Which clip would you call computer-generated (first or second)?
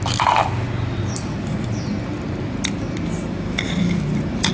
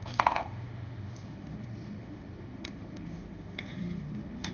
second